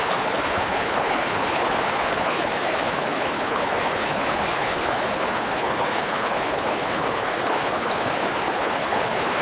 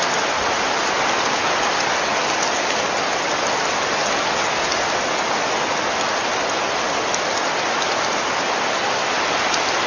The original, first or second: second